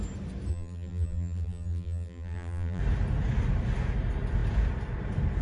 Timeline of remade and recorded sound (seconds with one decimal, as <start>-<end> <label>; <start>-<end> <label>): 0.0-0.5 recorded; 0.5-2.8 remade; 2.8-5.4 recorded